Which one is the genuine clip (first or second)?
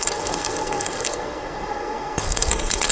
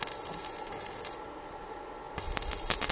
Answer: second